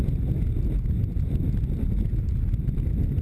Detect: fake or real real